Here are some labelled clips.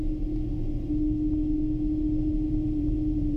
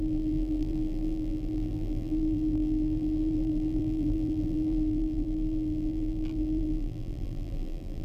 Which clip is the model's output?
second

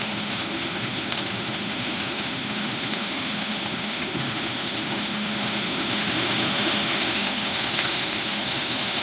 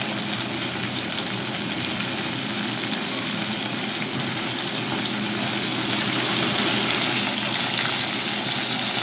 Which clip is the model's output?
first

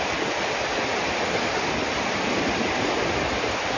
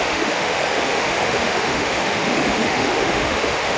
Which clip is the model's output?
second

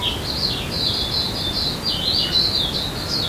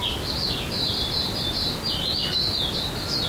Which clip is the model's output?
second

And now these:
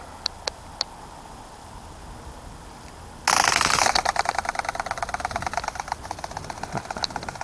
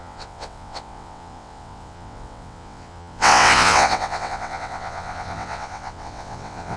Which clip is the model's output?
second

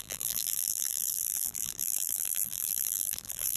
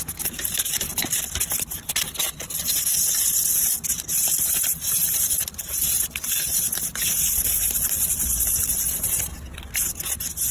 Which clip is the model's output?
first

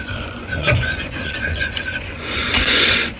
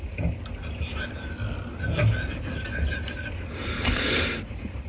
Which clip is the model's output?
first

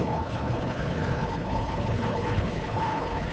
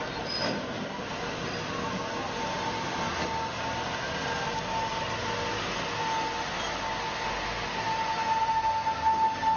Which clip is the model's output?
first